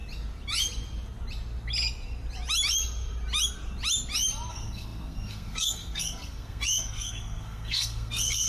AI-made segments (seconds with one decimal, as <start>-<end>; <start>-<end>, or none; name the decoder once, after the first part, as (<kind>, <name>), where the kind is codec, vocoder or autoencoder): 4.5-8.5 (codec, SNAC)